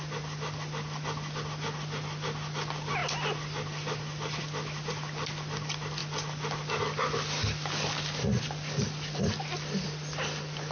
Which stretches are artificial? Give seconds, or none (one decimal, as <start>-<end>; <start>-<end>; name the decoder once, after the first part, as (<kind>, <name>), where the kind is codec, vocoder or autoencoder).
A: none